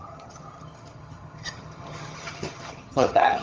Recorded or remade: remade